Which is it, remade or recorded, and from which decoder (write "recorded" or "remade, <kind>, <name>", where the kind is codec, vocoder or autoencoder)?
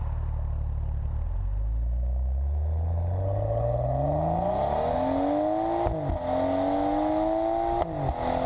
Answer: recorded